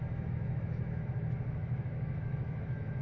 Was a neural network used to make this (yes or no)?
yes